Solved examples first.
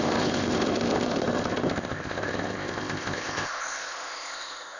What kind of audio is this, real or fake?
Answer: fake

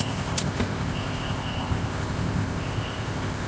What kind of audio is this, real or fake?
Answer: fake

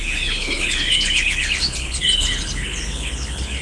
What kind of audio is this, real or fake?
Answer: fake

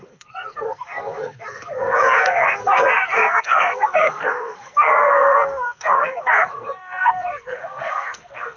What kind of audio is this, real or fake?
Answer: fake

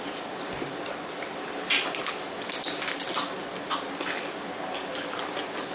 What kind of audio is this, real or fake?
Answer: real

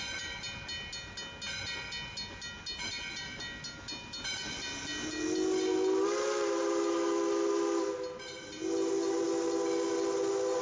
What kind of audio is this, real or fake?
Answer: real